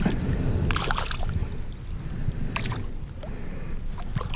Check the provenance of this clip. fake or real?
real